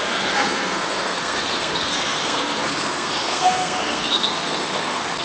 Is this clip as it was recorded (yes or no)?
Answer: no